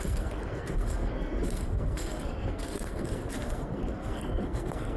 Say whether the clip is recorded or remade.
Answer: remade